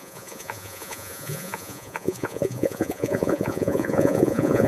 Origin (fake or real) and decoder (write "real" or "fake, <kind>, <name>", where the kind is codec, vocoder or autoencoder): fake, vocoder, Vocos